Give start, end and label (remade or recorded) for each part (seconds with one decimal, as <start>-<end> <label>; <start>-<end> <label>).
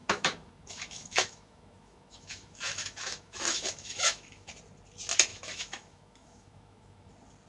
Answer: 0.0-4.5 remade; 4.5-5.3 recorded; 5.3-7.1 remade; 7.1-7.5 recorded